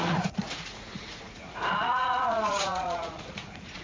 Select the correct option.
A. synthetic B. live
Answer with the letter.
A